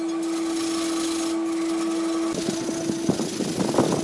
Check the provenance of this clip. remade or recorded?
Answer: recorded